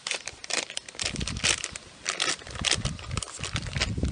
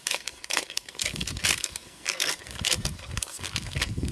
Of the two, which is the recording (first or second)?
first